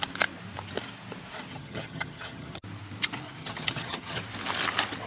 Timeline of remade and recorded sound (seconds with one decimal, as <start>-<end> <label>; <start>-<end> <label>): 0.0-1.5 recorded; 1.5-2.6 remade; 2.6-3.4 recorded; 3.4-4.2 remade; 4.2-5.1 recorded

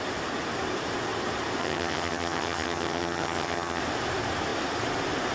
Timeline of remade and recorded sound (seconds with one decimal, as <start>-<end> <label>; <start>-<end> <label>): 0.0-1.6 recorded; 1.6-3.8 remade; 3.8-5.3 recorded

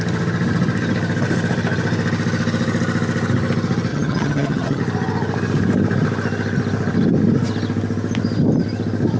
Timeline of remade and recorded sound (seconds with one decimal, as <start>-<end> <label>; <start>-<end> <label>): 0.0-3.9 recorded; 3.9-4.8 remade; 4.8-9.2 recorded

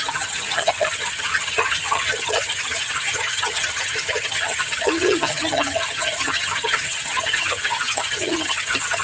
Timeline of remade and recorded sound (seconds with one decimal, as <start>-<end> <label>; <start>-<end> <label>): 0.0-9.0 remade